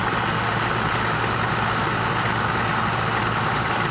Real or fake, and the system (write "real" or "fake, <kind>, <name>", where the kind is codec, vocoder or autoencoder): real